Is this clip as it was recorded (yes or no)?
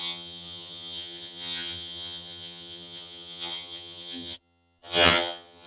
no